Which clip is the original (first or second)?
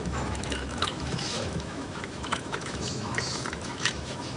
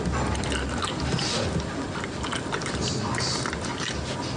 second